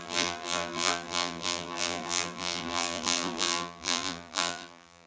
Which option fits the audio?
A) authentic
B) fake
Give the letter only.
B